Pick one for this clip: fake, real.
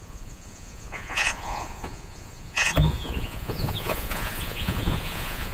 fake